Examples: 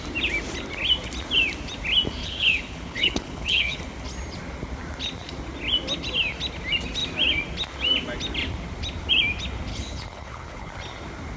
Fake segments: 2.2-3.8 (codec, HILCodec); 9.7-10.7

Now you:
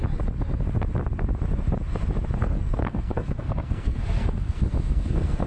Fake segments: 2.4-5.5 (codec, SNAC)

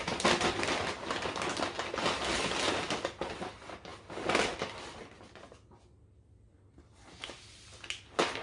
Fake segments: 6.5-7.4 (vocoder, BigVGAN v2)

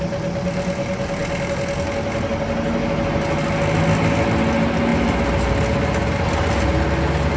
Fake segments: none

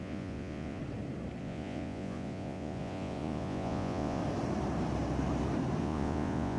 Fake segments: 0.0-0.8 (vocoder, Vocos); 1.4-4.2; 5.8-6.6

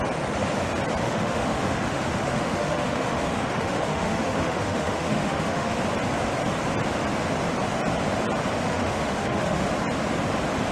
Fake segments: 1.0-5.8 (autoencoder, DAC-VAE); 8.7-9.7

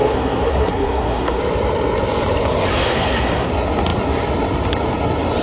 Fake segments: 0.0-1.4 (codec, SNAC); 2.7-3.5